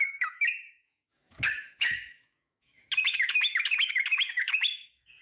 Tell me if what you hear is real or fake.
fake